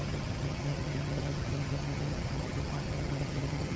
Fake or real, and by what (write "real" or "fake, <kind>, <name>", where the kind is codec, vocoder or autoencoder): fake, vocoder, HiFi-GAN